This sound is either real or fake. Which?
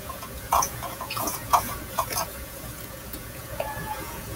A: fake